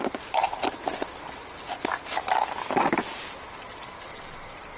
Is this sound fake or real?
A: real